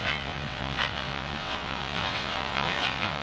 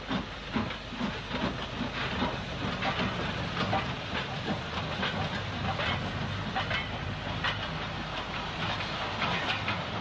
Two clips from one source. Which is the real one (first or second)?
second